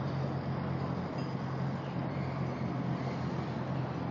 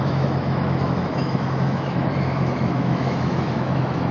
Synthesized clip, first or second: second